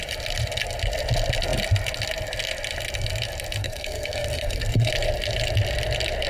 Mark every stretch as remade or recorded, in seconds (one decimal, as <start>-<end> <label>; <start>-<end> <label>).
0.0-3.6 recorded; 3.6-4.9 remade; 4.9-6.3 recorded